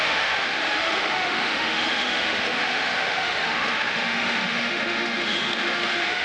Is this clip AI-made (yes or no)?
yes